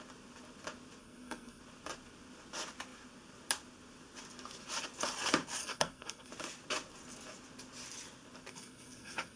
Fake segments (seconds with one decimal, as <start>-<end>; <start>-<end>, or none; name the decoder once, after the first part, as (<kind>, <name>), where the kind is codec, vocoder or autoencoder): 1.0-1.6 (codec, SNAC); 5.6-6.3; 8.5-9.4